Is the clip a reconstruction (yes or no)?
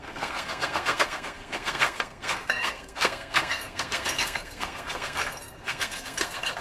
yes